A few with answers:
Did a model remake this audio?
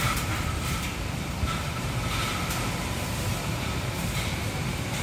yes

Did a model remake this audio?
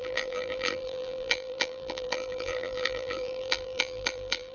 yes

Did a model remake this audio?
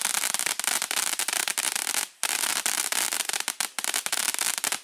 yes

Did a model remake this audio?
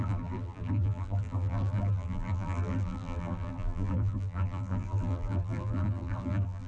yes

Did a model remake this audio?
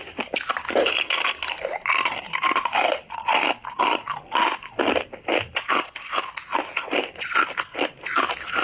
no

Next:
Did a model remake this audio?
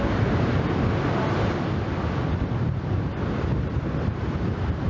no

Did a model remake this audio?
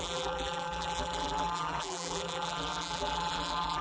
yes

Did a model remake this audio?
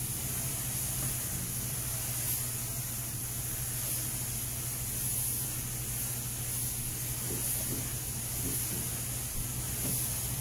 no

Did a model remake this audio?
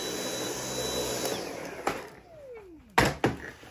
no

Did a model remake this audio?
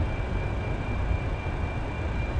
yes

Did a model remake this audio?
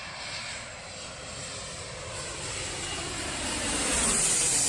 no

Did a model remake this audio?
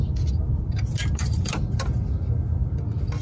no